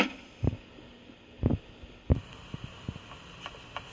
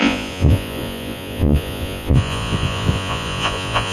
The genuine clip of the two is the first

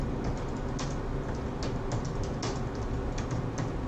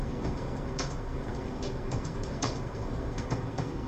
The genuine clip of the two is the first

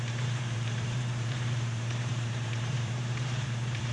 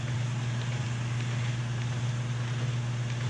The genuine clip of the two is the second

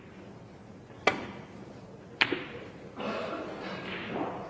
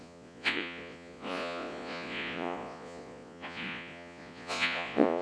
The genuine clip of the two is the first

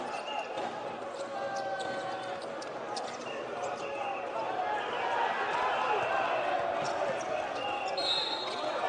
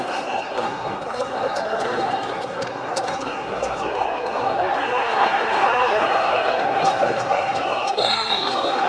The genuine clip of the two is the first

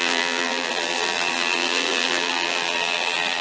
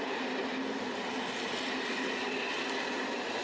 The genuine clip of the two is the second